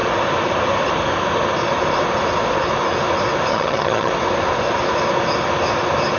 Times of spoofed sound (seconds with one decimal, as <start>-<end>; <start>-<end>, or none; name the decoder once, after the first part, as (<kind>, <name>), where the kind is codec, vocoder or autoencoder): 3.5-4.1 (vocoder, HiFi-GAN)

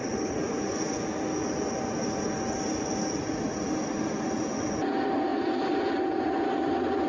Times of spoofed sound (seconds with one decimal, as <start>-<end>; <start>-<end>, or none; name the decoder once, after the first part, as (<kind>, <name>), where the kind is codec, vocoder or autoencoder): none